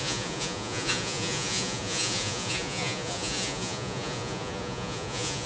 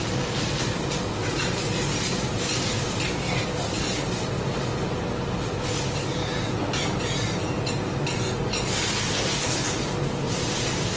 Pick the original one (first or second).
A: second